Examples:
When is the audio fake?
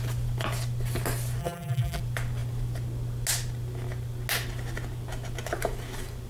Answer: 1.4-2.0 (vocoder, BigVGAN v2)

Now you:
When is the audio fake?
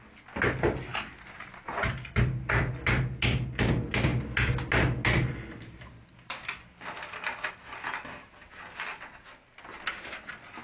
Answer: none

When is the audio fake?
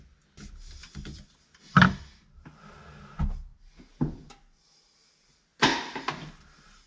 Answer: 0.8-1.6 (vocoder, BigVGAN v2)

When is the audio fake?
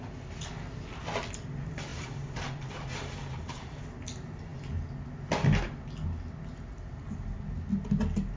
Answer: 1.9-3.8 (vocoder, BigVGAN v2)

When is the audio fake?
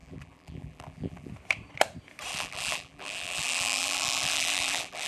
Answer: 0.0-1.3 (vocoder, BigVGAN v2); 2.3-5.1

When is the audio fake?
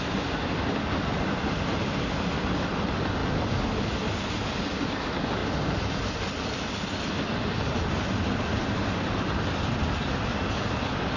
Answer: 8.5-9.4 (vocoder, BigVGAN v2)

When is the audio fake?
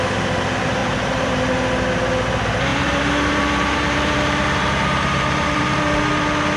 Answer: 0.8-1.4 (vocoder, BigVGAN v2); 2.7-5.8